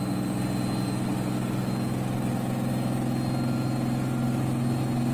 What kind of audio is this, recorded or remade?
recorded